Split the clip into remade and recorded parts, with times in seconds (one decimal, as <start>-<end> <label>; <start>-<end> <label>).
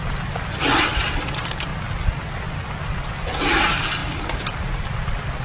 0.0-5.4 recorded